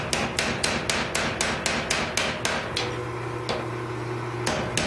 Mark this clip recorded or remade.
recorded